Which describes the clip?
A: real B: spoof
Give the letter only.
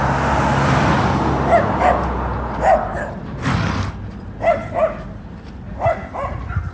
A